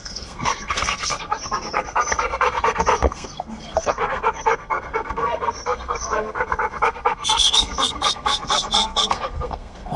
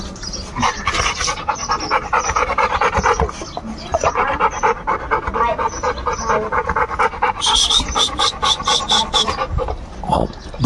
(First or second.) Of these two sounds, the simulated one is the first